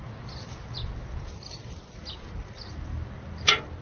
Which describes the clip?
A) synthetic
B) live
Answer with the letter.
B